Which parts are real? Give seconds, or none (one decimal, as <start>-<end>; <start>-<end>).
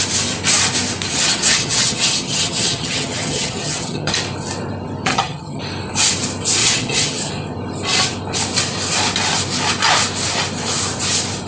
0.0-1.1; 4.1-5.1; 5.6-6.6; 7.3-11.5